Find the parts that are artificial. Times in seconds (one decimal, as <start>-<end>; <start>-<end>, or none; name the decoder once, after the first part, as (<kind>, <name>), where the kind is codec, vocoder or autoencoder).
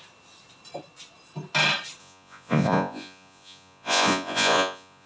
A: 2.0-5.1 (vocoder, Vocos)